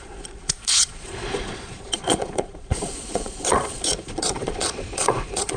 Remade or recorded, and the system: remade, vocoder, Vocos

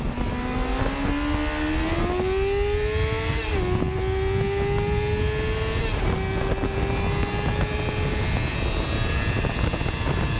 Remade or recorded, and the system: recorded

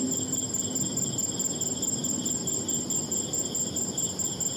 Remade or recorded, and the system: recorded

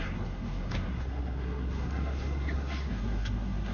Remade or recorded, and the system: remade, codec, SNAC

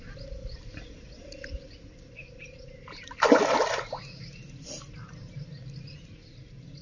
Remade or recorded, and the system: recorded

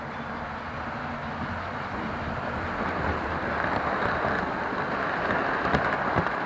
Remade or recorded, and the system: recorded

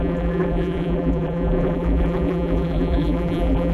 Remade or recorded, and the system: remade, vocoder, BigVGAN v2